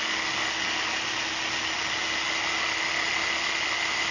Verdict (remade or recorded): recorded